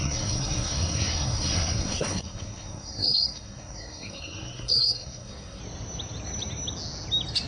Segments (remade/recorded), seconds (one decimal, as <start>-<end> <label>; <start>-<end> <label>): 0.0-5.6 remade; 5.6-7.5 recorded